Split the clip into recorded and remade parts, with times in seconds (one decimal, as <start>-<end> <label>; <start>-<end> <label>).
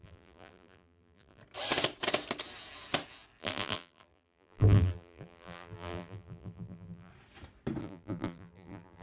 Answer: 0.0-1.4 remade; 1.4-3.4 recorded; 3.4-7.1 remade; 7.1-7.8 recorded; 7.8-9.0 remade